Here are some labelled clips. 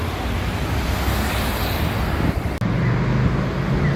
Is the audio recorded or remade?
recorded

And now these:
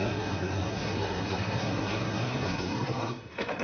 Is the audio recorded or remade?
remade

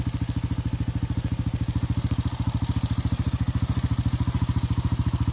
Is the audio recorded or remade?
recorded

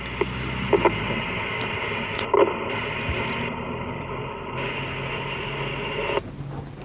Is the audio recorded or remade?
recorded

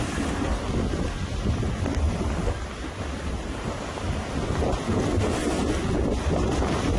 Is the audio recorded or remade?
recorded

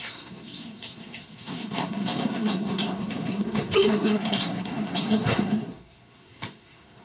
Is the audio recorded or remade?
remade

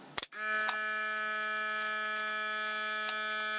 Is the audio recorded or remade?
recorded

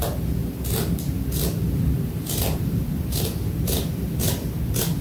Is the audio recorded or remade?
recorded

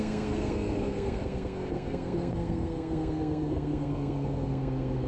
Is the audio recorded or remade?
remade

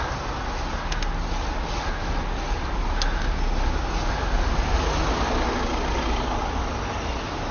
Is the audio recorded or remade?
recorded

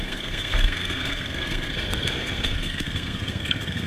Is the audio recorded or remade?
remade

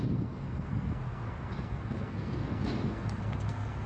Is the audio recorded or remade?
remade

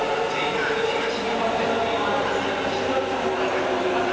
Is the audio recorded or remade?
recorded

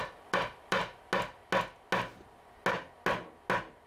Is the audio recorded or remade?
recorded